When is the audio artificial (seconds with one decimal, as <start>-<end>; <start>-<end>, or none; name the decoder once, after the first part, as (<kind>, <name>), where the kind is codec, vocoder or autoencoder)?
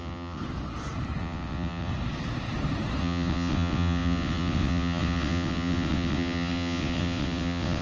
0.0-0.4 (vocoder, WaveNeXt); 1.2-1.9; 3.0-7.8